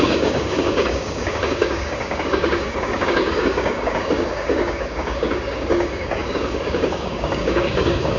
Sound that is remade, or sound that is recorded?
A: remade